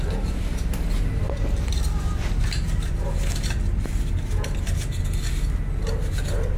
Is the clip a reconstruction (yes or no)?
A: no